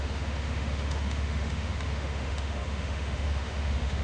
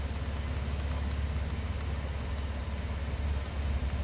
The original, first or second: second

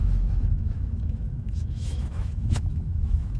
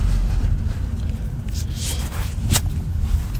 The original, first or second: second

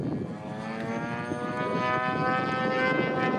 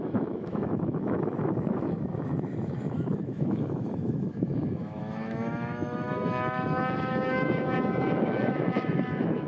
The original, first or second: first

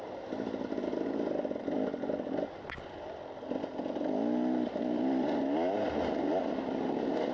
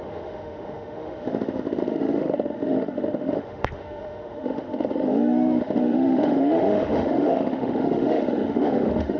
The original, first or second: first